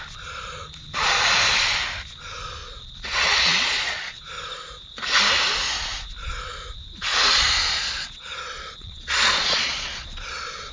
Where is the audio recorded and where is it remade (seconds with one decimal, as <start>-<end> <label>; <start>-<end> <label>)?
0.0-2.6 recorded; 2.6-4.3 remade; 4.3-8.0 recorded; 8.0-10.7 remade